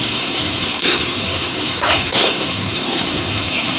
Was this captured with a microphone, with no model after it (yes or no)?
no